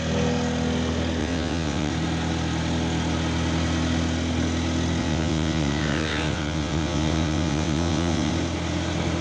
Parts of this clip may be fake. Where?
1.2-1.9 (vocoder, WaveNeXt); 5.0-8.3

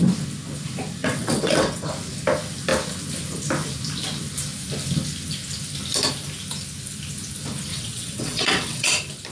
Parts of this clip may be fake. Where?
1.0-1.9 (vocoder, WaveNeXt); 7.7-8.9

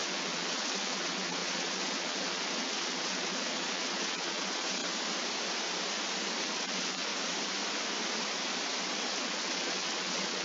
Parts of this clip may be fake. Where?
0.0-4.8 (vocoder, WaveNeXt); 6.4-7.1; 9.1-10.4

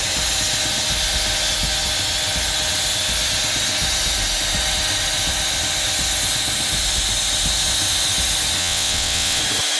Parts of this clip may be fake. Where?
8.6-9.4 (vocoder, WaveNeXt)